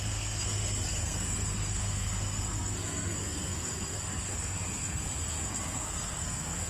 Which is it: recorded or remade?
remade